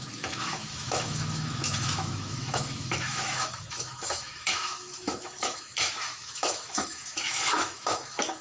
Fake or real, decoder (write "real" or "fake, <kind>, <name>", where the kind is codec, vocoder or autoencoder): fake, autoencoder, DAC-VAE